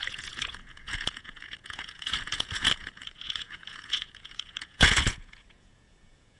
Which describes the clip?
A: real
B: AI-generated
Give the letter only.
B